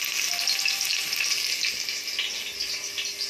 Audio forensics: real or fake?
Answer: real